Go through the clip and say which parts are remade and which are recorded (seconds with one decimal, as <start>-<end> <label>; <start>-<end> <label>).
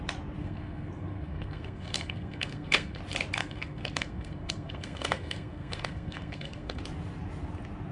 0.0-0.4 recorded; 0.4-3.0 remade; 3.0-3.4 recorded; 3.4-6.8 remade; 6.8-7.9 recorded